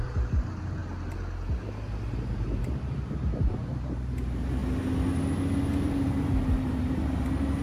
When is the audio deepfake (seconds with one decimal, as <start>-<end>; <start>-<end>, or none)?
0.0-0.8; 2.0-4.6; 5.8-7.6